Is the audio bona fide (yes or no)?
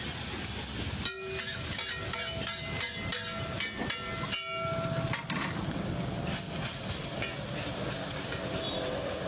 yes